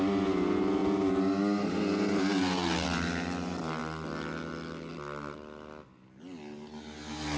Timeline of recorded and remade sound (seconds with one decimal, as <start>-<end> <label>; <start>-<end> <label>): 0.0-7.4 recorded